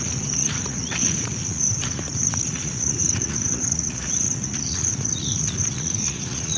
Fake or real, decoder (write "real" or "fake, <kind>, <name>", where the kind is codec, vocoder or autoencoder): fake, vocoder, Vocos